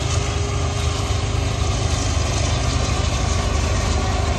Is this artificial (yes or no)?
no